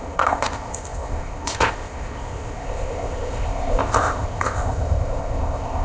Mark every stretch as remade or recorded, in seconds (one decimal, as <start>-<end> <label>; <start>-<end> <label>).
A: 0.0-5.8 remade